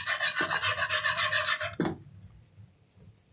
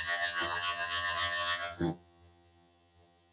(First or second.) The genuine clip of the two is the first